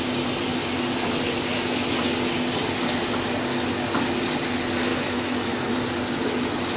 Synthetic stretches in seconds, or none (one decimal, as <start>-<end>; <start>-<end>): 4.9-5.7